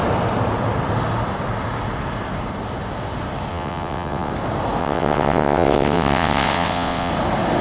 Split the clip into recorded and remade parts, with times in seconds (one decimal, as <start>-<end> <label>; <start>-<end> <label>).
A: 0.0-3.5 recorded; 3.5-4.3 remade; 4.3-4.8 recorded; 4.8-7.1 remade; 7.1-7.6 recorded